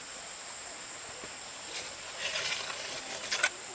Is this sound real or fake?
real